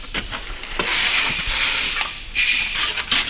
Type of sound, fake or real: real